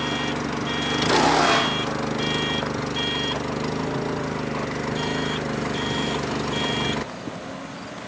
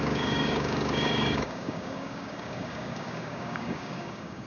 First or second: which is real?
first